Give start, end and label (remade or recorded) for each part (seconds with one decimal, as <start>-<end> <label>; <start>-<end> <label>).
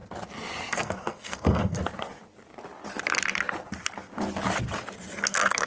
0.0-0.7 recorded; 0.7-1.8 remade; 1.8-5.2 recorded; 5.2-5.7 remade